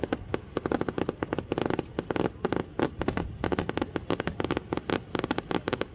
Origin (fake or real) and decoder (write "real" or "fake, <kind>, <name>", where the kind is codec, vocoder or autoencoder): real